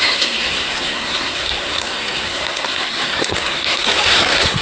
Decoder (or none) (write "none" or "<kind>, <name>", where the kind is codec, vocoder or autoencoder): codec, SNAC